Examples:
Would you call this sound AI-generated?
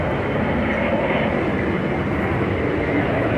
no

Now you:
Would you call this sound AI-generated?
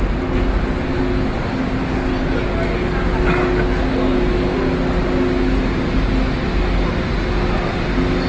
no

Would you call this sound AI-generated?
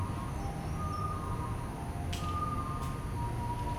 no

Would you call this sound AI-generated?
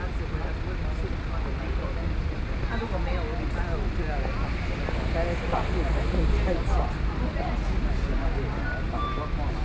no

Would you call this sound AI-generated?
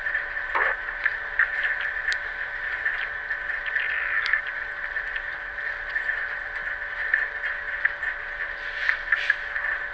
no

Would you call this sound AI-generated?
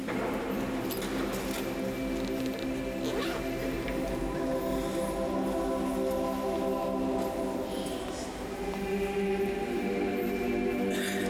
no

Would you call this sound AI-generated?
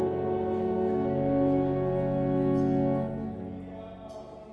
no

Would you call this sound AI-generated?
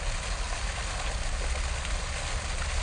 no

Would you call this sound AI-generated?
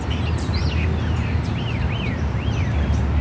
no